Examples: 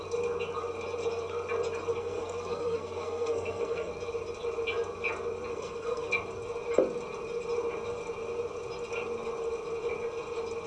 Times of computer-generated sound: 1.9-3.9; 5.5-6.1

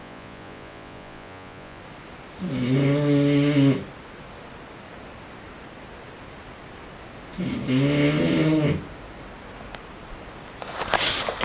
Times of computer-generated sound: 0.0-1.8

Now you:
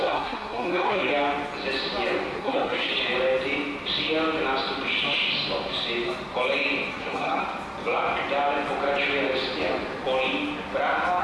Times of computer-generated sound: 0.0-1.1; 2.4-2.9; 6.9-7.4

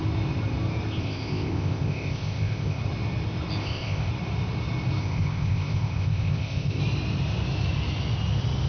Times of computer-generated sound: 1.0-2.8; 3.6-4.1; 5.0-6.8

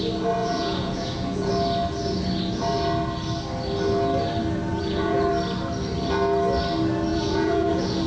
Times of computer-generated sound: 0.4-1.5; 4.7-5.3; 7.1-8.1